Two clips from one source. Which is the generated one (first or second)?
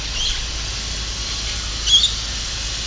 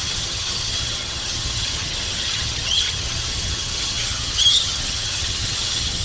second